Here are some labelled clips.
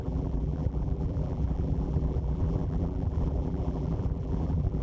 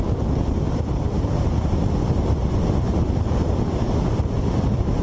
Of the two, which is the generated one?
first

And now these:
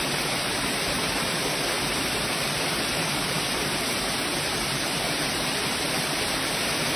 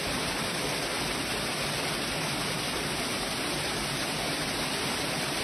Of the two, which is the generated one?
first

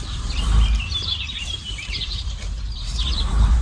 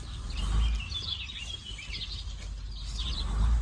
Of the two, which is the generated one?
first